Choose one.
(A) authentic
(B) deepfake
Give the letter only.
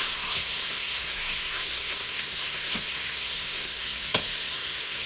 B